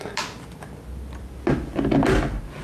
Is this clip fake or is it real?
real